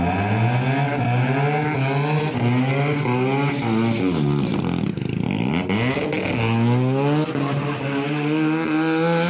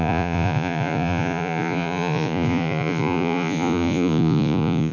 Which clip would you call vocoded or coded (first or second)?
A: second